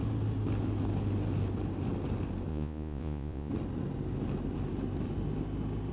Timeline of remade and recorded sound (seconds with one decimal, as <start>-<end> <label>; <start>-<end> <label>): 0.0-2.5 recorded; 2.5-3.5 remade; 3.5-5.9 recorded